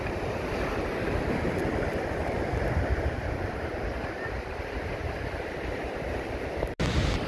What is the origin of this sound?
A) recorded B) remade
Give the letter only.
A